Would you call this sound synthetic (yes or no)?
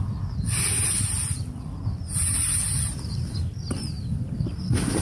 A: no